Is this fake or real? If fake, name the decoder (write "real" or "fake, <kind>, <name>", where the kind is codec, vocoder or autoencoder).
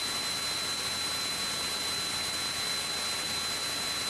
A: real